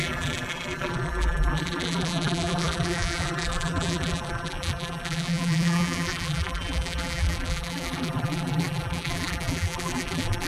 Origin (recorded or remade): remade